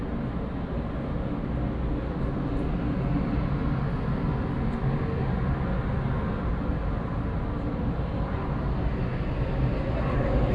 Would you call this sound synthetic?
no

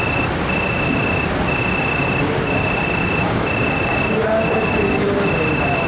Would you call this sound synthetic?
no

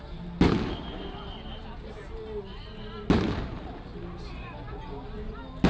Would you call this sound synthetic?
no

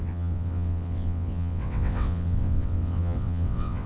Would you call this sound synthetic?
yes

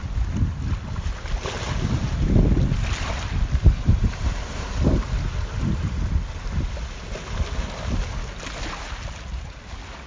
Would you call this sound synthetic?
no